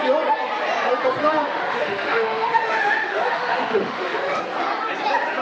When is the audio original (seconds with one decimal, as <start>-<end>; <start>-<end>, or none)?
0.0-1.2; 4.4-5.4